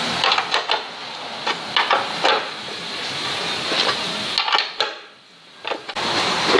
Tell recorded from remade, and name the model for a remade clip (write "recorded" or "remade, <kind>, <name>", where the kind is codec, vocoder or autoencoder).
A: recorded